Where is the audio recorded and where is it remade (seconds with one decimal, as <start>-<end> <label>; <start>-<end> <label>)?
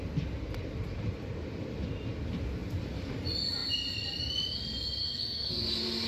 0.0-5.0 recorded; 5.0-5.5 remade; 5.5-6.1 recorded